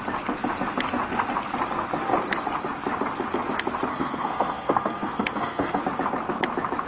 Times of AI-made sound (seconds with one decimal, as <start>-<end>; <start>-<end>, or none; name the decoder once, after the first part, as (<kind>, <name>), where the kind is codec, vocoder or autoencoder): 3.9-5.8 (codec, SNAC)

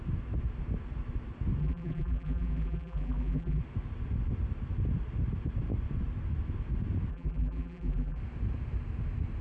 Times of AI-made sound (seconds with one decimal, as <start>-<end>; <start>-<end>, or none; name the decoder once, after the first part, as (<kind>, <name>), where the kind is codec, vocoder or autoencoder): 1.6-3.6 (vocoder, BigVGAN v2); 7.1-8.2